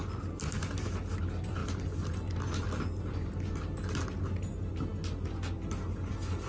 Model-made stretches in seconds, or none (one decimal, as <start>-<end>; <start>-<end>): none

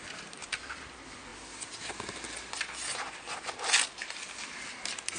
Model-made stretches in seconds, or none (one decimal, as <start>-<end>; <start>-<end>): none

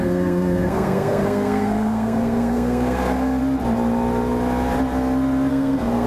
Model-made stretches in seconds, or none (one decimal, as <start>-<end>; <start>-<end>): 0.0-3.4; 5.5-6.1